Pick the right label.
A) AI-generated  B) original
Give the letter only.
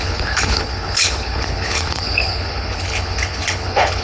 A